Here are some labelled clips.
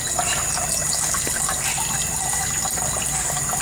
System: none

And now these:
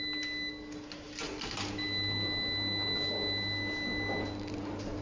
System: none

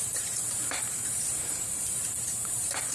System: vocoder, BigVGAN v2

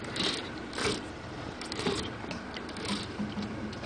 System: vocoder, BigVGAN v2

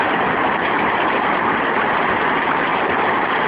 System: none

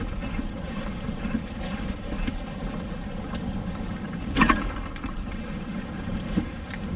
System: vocoder, BigVGAN v2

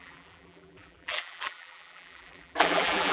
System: vocoder, BigVGAN v2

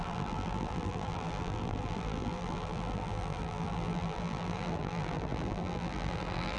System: vocoder, BigVGAN v2